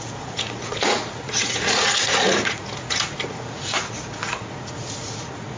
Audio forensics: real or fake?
fake